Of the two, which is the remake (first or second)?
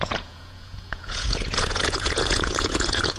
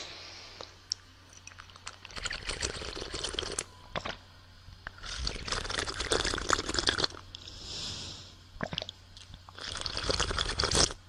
first